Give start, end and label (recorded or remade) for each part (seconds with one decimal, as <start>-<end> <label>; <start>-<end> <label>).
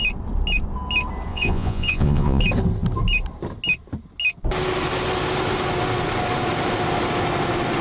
0.0-1.3 recorded; 1.3-2.4 remade; 2.4-7.8 recorded